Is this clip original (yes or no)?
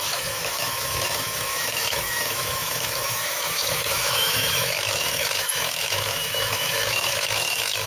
no